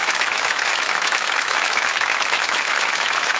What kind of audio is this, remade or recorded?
remade